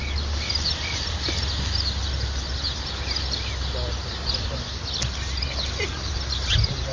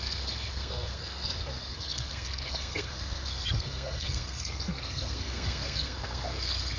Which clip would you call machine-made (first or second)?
second